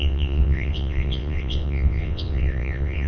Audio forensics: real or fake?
fake